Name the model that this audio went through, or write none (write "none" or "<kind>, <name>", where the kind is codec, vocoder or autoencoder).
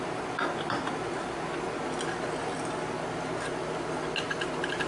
none